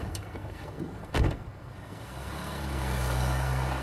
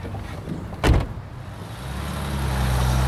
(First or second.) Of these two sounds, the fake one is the first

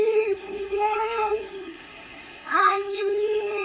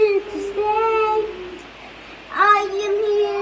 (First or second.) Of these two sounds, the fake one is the first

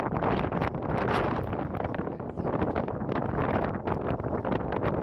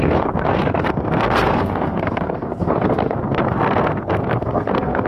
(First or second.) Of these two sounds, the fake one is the second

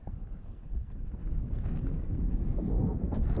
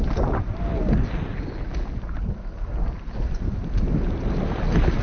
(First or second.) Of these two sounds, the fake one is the first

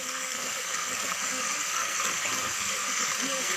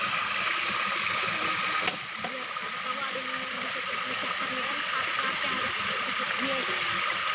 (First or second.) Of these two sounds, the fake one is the first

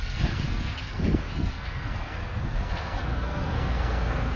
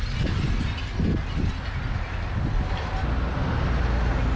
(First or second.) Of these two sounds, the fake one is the first